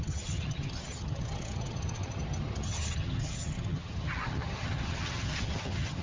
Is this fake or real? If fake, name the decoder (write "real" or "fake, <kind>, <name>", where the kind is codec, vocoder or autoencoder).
fake, vocoder, HiFi-GAN